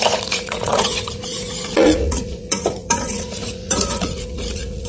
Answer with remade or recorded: remade